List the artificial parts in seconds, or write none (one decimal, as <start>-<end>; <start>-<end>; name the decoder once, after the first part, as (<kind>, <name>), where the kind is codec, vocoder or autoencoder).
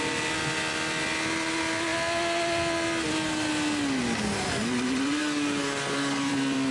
5.2-6.3 (codec, DAC)